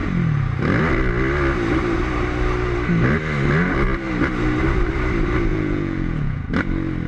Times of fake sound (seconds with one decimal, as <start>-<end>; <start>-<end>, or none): 5.5-6.5